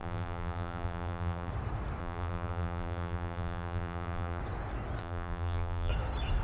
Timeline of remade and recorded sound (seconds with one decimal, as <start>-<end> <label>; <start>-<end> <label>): 0.0-1.5 remade; 1.5-2.0 recorded; 2.0-4.4 remade; 4.4-5.0 recorded; 5.0-5.9 remade; 5.9-6.4 recorded